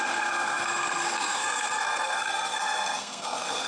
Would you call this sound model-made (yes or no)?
yes